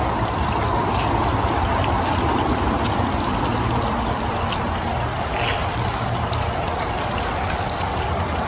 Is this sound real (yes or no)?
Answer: yes